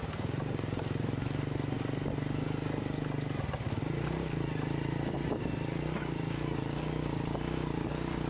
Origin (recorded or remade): recorded